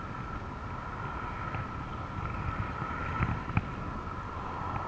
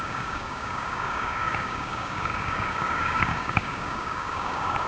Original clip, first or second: first